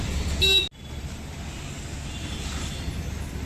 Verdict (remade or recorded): recorded